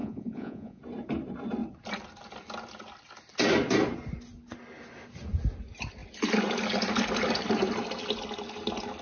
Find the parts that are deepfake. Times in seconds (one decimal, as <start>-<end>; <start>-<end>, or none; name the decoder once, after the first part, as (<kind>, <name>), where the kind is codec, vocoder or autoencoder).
0.0-0.8 (vocoder, Vocos)